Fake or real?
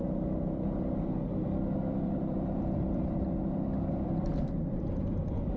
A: fake